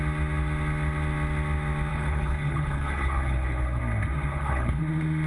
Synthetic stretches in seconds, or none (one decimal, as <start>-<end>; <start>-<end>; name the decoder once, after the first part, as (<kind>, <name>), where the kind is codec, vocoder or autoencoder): 1.9-3.8 (codec, HILCodec); 4.3-4.8